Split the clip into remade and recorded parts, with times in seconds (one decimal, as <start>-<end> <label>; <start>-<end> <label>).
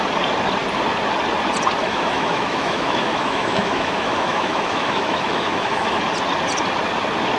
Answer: 0.0-1.8 recorded; 1.8-6.0 remade; 6.0-7.4 recorded